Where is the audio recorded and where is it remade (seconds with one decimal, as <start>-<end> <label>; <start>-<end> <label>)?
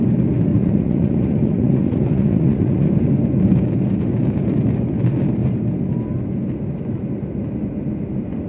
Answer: 0.0-0.5 recorded; 0.5-2.9 remade; 2.9-8.5 recorded